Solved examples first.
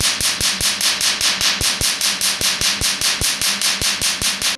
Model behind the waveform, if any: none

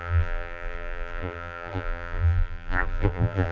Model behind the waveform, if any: vocoder, BigVGAN v2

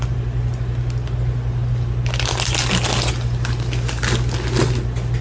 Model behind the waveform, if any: none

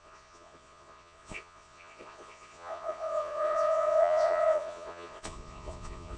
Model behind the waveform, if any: vocoder, Vocos